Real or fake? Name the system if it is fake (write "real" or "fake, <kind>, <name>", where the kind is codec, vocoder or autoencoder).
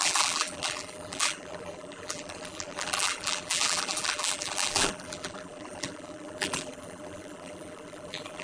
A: fake, vocoder, BigVGAN v2